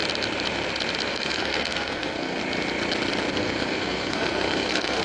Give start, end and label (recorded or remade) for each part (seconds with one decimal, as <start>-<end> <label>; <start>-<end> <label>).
0.0-1.1 recorded; 1.1-2.4 remade; 2.4-3.3 recorded; 3.3-5.0 remade